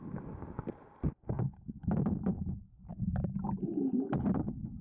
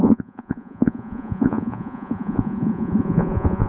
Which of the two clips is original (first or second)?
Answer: first